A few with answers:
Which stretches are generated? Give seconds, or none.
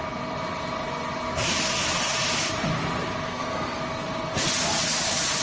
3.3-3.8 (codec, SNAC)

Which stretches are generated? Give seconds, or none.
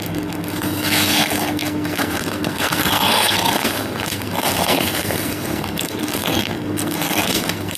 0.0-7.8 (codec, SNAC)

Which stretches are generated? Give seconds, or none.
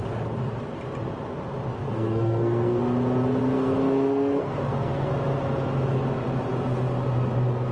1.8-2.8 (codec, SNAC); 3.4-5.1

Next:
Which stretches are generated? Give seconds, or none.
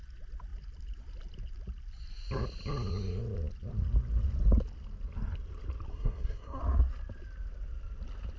5.9-6.6 (codec, SNAC)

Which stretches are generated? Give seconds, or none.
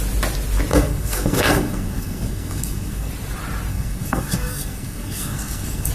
0.7-3.1 (codec, SNAC); 3.7-5.9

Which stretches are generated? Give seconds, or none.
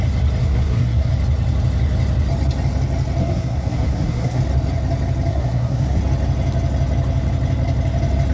0.4-1.1 (codec, SNAC); 3.2-4.4; 5.3-6.0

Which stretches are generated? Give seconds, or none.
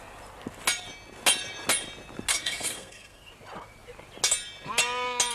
2.3-3.3 (codec, SNAC)